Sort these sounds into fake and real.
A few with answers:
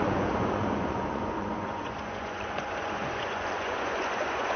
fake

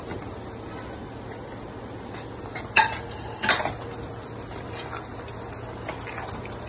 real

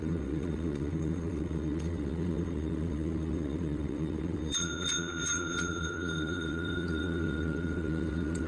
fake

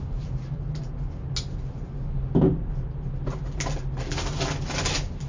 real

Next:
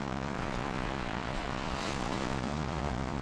fake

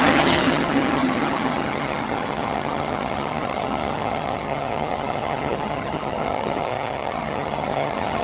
fake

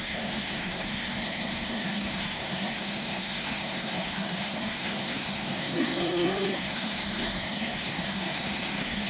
fake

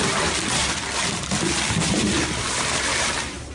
real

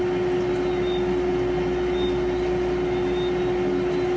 real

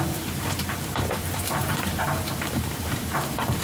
fake